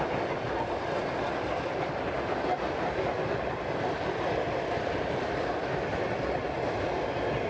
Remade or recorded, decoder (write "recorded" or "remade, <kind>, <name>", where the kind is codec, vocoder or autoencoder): recorded